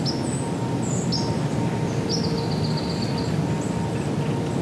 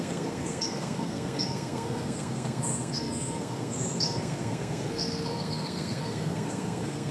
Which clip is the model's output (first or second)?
second